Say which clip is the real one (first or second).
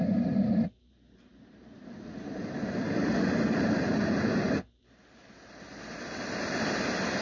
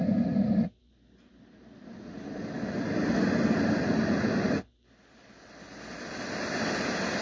second